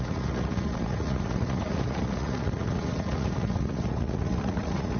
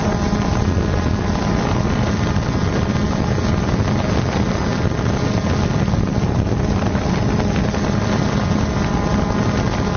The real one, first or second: second